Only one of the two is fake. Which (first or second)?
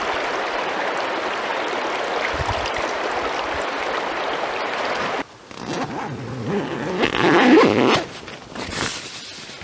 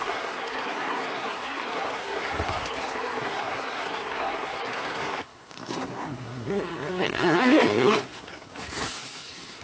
second